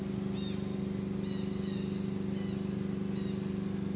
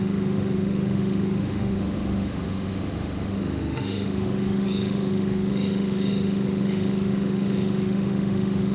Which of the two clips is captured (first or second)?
first